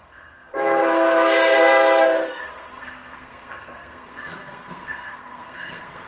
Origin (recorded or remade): remade